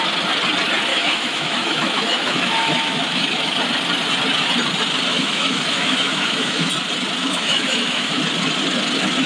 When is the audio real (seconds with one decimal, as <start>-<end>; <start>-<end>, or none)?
0.0-0.9; 3.6-5.1; 6.7-7.2; 8.2-9.3